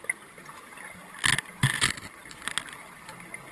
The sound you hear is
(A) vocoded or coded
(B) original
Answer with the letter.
B